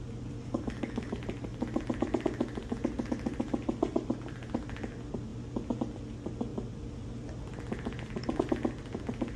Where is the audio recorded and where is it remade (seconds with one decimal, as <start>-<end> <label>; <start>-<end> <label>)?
0.0-0.4 recorded; 0.4-1.1 remade; 1.1-9.4 recorded